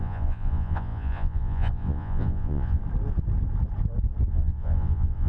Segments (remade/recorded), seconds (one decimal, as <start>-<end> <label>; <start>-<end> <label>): 0.0-2.8 remade; 2.8-4.3 recorded; 4.3-5.3 remade

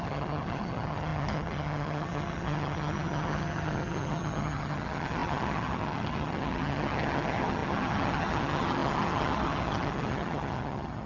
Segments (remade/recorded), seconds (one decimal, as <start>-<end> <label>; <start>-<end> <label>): 0.0-11.1 remade

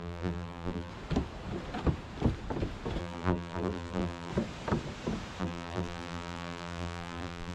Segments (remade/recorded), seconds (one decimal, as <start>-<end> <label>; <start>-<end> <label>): 0.0-0.9 remade; 0.9-3.0 recorded; 3.0-4.3 remade; 4.3-5.4 recorded; 5.4-7.5 remade

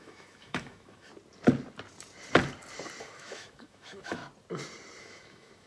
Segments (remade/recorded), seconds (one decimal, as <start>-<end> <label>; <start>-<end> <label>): 0.0-1.1 remade; 1.1-3.0 recorded; 3.0-4.2 remade; 4.2-5.0 recorded; 5.0-5.7 remade

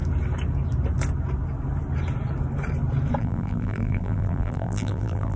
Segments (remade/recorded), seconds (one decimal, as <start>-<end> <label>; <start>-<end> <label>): 0.0-3.2 recorded; 3.2-5.4 remade

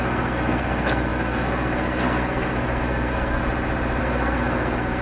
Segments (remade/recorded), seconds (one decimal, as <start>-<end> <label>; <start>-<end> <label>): 0.0-3.4 remade; 3.4-4.0 recorded; 4.0-5.0 remade

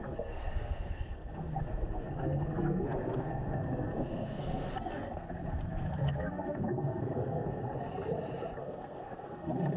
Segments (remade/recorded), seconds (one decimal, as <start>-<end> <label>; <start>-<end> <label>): 0.0-7.6 remade; 7.6-8.6 recorded; 8.6-9.8 remade

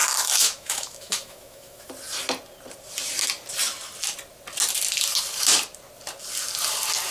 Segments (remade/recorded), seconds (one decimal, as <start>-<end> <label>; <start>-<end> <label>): 0.0-1.9 remade; 1.9-7.1 recorded